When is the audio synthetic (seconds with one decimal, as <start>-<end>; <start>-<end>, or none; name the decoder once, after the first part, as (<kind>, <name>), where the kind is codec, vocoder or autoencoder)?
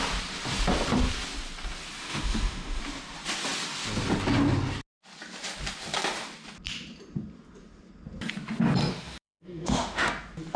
2.0-2.8 (autoencoder, DAC-VAE); 8.9-10.1